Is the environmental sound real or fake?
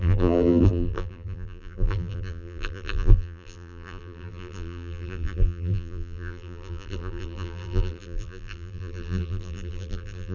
fake